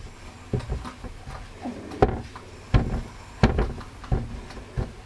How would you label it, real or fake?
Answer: real